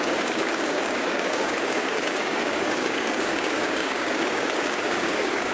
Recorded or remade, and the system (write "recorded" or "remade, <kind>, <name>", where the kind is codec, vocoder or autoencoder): remade, codec, DAC